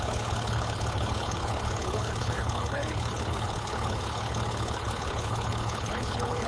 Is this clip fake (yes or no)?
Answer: yes